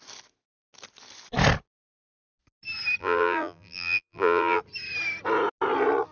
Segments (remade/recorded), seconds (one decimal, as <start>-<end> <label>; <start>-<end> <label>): 0.0-3.0 recorded; 3.0-4.6 remade; 4.6-6.1 recorded